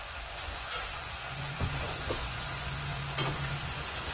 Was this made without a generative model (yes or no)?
no